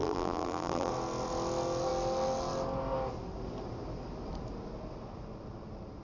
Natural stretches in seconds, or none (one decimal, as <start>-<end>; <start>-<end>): 0.9-6.0